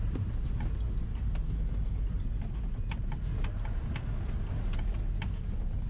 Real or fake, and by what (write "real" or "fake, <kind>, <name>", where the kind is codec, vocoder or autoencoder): real